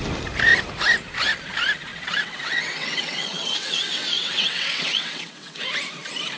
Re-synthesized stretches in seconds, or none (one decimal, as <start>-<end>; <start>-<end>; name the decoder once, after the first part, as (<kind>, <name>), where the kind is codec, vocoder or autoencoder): 1.9-5.7 (vocoder, WaveNeXt)

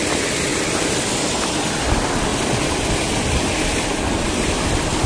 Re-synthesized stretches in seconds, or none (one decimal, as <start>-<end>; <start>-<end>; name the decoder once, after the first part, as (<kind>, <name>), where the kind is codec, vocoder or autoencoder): none

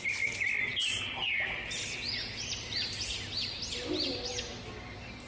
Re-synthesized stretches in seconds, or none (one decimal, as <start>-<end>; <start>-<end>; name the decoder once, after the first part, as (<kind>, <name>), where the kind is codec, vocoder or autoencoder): 0.7-1.9 (vocoder, BigVGAN v2)

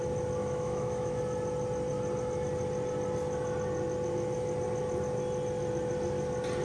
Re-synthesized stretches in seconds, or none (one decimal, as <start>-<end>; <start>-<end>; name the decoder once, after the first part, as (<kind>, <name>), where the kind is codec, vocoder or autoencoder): 0.4-1.2 (autoencoder, DAC-VAE)

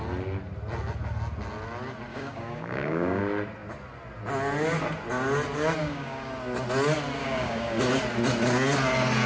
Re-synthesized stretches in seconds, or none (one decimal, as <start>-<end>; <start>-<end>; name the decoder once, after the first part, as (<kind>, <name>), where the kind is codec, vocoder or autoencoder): 2.1-3.2 (codec, DAC); 5.8-6.3; 7.2-7.8

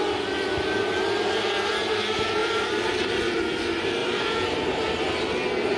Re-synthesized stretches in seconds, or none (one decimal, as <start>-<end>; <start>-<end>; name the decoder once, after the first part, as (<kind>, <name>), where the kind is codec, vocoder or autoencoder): 2.4-3.2 (vocoder, BigVGAN v2); 4.0-4.9

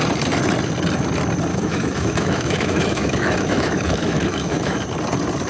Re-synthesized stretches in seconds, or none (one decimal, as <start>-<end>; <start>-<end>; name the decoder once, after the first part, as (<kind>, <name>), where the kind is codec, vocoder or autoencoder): 1.5-4.8 (autoencoder, DAC-VAE)

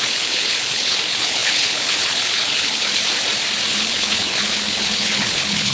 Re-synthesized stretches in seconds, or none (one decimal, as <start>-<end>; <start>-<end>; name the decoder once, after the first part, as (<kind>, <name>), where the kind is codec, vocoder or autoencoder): 0.0-3.0 (codec, HILCodec); 3.7-5.7